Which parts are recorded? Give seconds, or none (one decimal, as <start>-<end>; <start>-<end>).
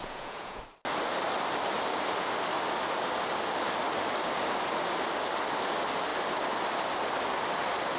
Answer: 0.6-8.0